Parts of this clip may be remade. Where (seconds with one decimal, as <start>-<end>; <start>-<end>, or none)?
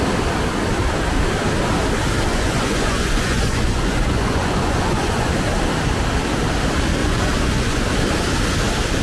2.3-5.3; 7.0-7.8